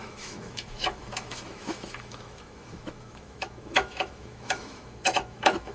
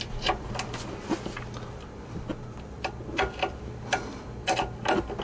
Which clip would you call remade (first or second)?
first